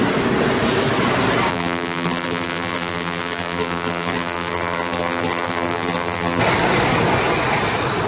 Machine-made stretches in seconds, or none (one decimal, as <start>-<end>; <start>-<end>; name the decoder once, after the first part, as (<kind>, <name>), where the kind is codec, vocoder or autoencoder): 1.5-6.4 (vocoder, BigVGAN v2)